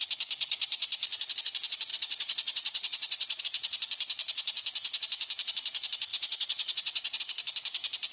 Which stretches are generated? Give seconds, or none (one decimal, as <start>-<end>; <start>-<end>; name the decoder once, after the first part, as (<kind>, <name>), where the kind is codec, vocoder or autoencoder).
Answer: 1.9-3.4 (vocoder, WaveNeXt); 6.1-7.2